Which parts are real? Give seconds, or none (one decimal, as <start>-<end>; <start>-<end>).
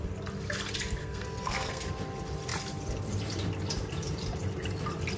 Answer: 0.0-1.0; 1.9-5.2